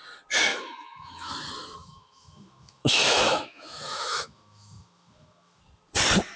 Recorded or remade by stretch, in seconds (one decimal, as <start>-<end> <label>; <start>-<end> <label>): 0.0-0.5 recorded; 0.5-1.3 remade; 1.3-1.8 recorded; 1.8-5.6 remade; 5.6-6.4 recorded

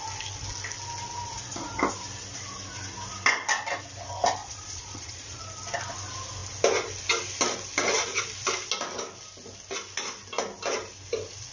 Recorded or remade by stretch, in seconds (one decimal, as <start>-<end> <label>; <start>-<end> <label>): 0.0-4.4 recorded; 4.4-5.4 remade; 5.4-11.5 recorded

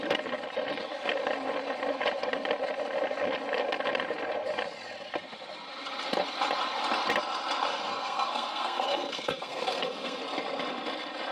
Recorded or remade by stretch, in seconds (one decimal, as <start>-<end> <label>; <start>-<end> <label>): 0.0-7.7 recorded; 7.7-10.2 remade; 10.2-11.3 recorded

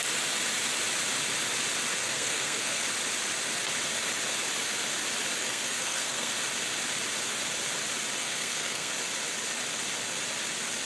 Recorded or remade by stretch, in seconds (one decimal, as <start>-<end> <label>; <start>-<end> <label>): 0.0-1.9 recorded; 1.9-2.8 remade; 2.8-5.4 recorded; 5.4-6.3 remade; 6.3-8.2 recorded; 8.2-8.9 remade; 8.9-10.8 recorded

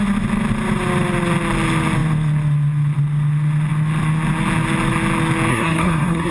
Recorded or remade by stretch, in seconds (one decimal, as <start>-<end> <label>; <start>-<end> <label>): 0.0-5.5 recorded; 5.5-6.3 remade